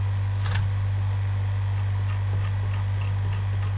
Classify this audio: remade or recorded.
recorded